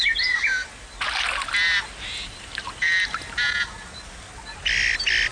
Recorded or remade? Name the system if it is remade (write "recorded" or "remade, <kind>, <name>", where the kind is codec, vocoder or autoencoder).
recorded